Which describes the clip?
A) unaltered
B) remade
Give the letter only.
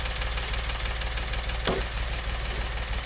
A